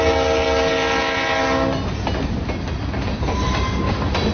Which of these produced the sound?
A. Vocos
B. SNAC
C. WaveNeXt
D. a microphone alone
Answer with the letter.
D